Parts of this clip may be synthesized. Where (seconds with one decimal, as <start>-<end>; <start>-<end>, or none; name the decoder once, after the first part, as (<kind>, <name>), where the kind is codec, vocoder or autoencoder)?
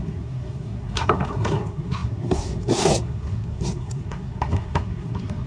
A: 0.0-5.5 (codec, SNAC)